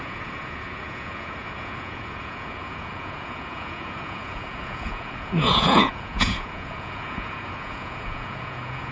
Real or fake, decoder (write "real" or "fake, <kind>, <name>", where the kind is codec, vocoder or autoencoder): fake, vocoder, Vocos